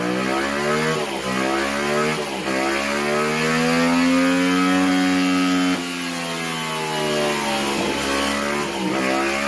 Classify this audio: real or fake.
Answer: real